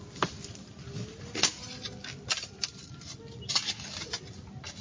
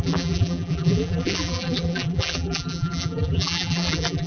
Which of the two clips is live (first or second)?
first